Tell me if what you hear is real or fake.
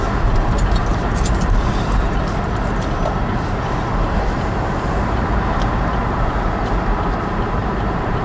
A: fake